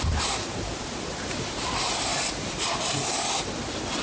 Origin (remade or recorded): remade